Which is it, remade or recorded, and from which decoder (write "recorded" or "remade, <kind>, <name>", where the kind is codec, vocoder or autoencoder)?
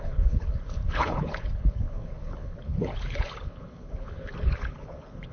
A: remade, codec, HILCodec